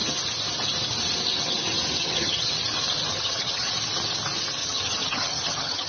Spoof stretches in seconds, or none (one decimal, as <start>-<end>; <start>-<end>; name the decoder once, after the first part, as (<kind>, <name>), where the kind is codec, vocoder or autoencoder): 2.0-2.5 (vocoder, HiFi-GAN); 3.1-3.7; 4.6-5.9